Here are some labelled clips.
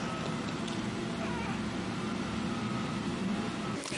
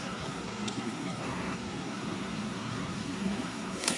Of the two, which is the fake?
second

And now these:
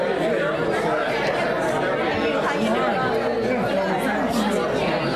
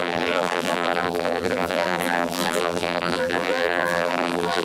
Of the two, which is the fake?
second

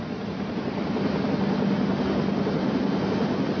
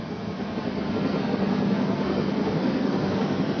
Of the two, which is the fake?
second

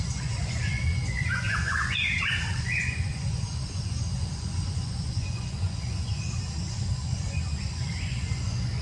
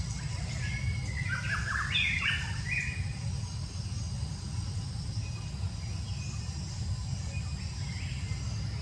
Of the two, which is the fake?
first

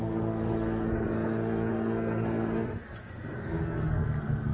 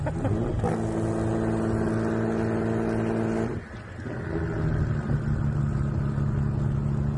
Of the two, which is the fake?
first